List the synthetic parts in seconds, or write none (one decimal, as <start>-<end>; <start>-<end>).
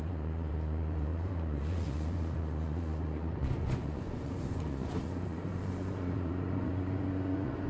0.0-7.7